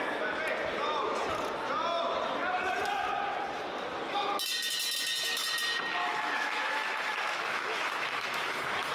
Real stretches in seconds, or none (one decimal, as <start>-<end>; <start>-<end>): 0.0-6.0